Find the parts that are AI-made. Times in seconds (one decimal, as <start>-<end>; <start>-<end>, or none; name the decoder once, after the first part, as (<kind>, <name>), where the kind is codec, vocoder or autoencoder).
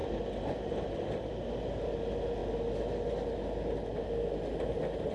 0.0-1.3 (vocoder, BigVGAN v2)